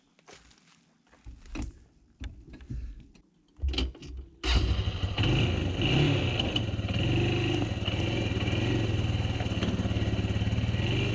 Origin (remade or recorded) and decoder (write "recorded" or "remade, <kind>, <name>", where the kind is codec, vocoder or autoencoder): recorded